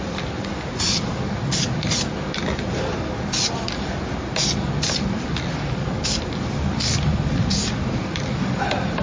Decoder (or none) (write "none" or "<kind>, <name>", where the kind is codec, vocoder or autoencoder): none